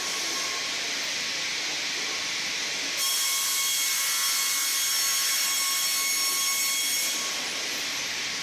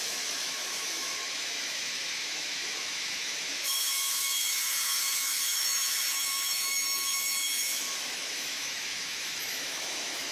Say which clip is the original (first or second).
first